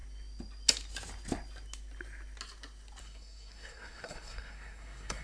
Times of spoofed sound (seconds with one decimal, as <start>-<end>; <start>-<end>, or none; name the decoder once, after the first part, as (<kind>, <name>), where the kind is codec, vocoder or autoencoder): 3.0-5.2 (codec, SNAC)